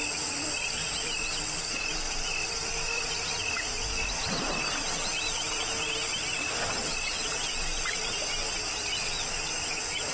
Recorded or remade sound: recorded